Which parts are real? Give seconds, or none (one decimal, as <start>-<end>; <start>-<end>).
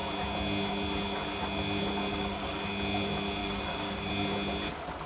0.0-2.1; 2.6-3.4; 4.1-5.1